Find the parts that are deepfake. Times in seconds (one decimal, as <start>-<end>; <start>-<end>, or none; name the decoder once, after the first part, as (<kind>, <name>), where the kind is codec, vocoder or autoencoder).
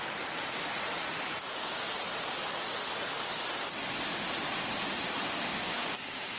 5.5-6.4 (codec, DAC)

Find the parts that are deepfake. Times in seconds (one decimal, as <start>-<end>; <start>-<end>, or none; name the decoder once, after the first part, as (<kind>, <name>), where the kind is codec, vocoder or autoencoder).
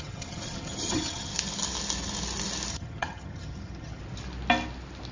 0.0-1.3 (vocoder, HiFi-GAN); 2.7-4.0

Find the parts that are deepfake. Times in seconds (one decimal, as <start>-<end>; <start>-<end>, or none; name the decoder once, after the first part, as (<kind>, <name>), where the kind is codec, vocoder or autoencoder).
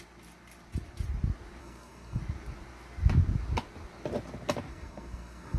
1.6-2.2 (codec, SNAC); 4.7-5.6